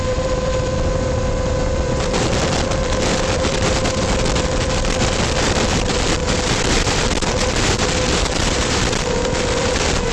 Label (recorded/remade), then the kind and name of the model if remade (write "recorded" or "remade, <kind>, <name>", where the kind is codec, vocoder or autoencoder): remade, vocoder, BigVGAN v2